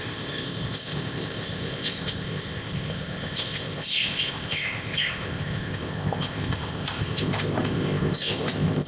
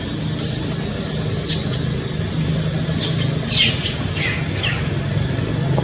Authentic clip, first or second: second